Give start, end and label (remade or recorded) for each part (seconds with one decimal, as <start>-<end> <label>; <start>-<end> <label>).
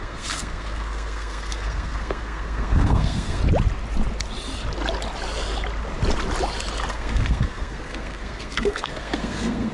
0.0-3.4 remade; 3.4-6.9 recorded; 6.9-9.7 remade